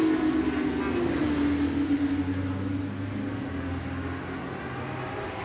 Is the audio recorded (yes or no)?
yes